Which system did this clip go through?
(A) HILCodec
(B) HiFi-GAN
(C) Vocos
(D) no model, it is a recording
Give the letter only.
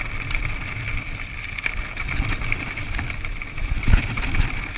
D